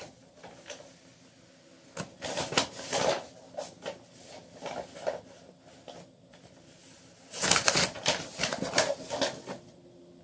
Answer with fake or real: real